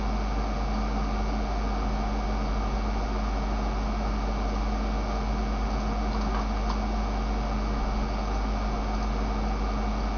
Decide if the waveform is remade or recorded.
recorded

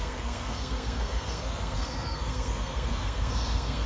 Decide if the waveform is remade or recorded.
remade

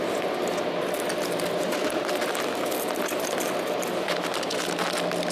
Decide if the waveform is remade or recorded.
recorded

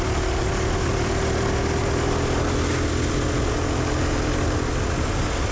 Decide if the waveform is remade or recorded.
recorded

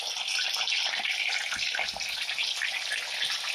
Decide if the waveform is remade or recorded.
recorded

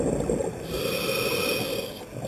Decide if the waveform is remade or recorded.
recorded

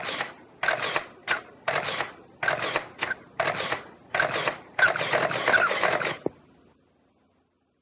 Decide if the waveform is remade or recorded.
recorded